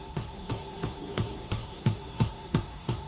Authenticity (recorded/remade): remade